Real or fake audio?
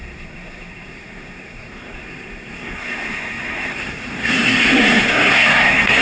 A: fake